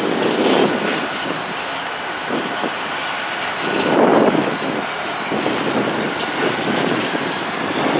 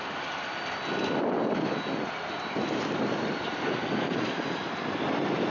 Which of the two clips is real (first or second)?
second